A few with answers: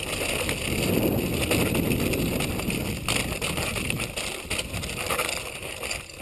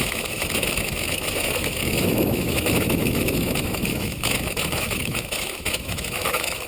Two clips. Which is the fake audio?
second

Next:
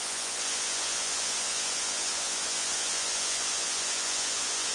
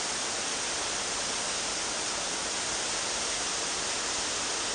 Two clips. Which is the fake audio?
first